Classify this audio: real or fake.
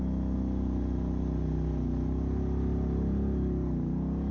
real